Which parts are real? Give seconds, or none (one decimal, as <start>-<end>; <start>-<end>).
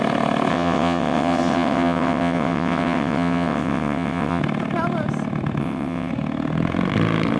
0.0-0.5; 4.4-5.6; 6.1-7.4